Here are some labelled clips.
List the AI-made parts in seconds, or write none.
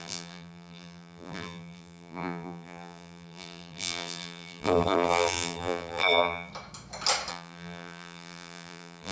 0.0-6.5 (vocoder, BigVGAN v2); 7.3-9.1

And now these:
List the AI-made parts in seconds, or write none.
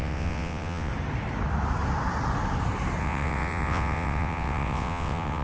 0.0-0.9 (vocoder, WaveNeXt); 3.0-5.4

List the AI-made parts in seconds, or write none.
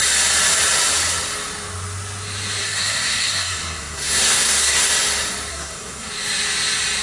2.6-4.9 (codec, SNAC); 5.5-6.1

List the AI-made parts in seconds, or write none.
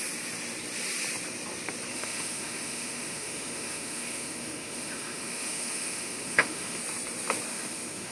1.9-6.8 (autoencoder, DAC-VAE); 7.5-8.1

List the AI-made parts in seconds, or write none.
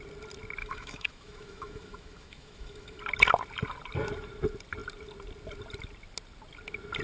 0.6-3.0 (autoencoder, DAC-VAE)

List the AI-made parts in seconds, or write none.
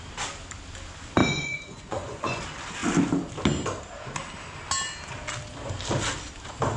1.2-2.4 (vocoder, Vocos)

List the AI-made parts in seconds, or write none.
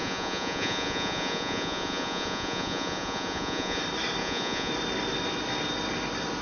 0.0-3.8 (vocoder, Vocos); 4.2-4.7